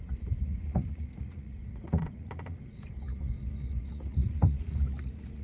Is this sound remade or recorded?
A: remade